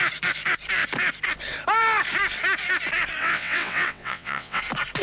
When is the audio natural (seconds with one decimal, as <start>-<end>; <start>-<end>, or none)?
0.0-3.2; 4.6-5.0